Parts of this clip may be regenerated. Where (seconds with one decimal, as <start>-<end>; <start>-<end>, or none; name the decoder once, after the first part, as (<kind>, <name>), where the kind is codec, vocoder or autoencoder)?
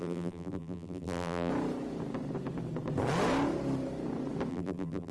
0.0-1.5 (vocoder, BigVGAN v2); 4.5-5.1